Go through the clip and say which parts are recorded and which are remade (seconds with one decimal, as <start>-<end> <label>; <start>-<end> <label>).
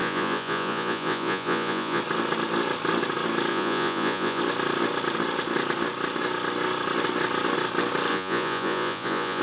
0.0-2.0 remade; 2.0-3.5 recorded; 3.5-4.4 remade; 4.4-8.1 recorded; 8.1-9.4 remade